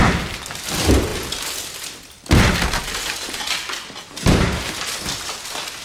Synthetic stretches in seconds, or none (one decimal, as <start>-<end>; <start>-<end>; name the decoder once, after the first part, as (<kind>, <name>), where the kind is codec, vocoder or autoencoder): none